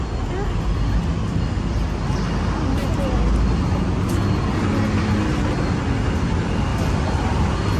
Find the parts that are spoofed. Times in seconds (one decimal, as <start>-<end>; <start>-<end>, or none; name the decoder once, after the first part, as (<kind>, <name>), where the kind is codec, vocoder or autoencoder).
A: none